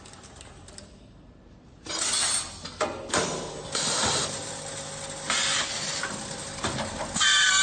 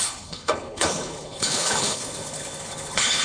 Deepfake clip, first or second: second